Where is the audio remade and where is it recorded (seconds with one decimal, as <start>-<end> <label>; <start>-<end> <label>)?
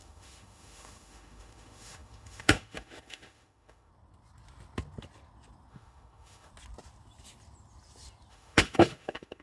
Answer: 0.0-3.9 remade; 3.9-5.7 recorded; 5.7-6.5 remade; 6.5-8.3 recorded; 8.3-9.4 remade